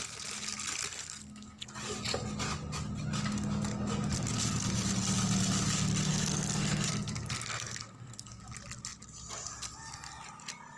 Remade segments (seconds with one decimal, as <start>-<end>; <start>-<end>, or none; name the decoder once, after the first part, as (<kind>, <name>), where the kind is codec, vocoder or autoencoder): 0.9-1.7 (codec, SNAC); 6.1-8.4